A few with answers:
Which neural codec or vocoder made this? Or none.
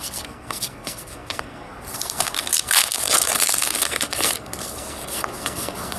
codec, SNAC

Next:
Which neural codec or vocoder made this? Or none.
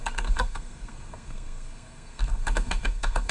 codec, SNAC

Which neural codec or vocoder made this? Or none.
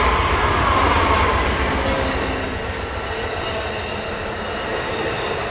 none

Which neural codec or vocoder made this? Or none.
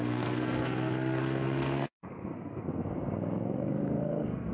codec, SNAC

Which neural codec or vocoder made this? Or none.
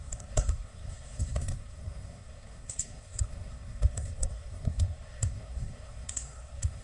codec, SNAC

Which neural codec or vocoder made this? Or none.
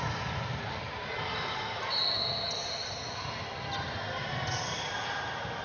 none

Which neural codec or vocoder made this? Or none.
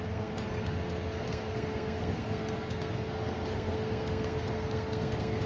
codec, SNAC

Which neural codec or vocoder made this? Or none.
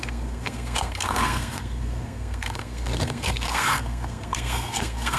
codec, SNAC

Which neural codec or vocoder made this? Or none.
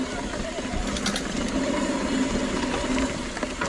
none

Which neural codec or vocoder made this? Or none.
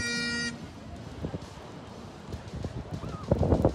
none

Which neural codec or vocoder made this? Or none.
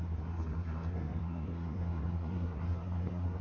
codec, SNAC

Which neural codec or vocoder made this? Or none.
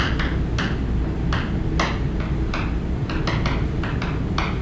none